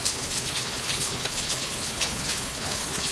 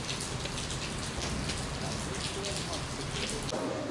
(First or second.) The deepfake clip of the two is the first